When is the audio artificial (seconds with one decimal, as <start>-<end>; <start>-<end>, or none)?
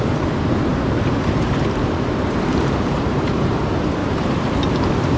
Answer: 0.7-3.6; 4.0-4.5